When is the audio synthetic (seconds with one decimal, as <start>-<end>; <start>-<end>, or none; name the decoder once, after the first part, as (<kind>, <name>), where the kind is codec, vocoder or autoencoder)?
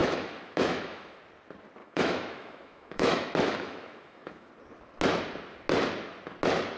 0.0-1.2 (autoencoder, DAC-VAE); 1.8-4.5